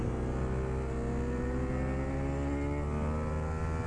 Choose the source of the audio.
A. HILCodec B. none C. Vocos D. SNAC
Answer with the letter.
B